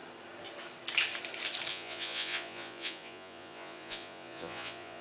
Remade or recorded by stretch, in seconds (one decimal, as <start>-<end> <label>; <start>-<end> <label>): 0.0-1.7 recorded; 1.7-5.0 remade